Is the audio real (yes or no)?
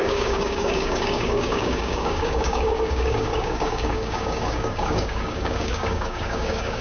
no